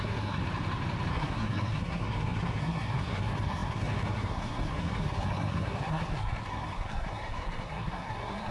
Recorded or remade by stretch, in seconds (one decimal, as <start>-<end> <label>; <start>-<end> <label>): 0.0-0.4 remade; 0.4-1.1 recorded; 1.1-8.5 remade